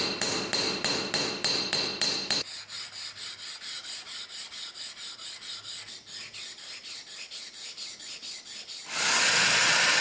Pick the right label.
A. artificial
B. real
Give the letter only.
B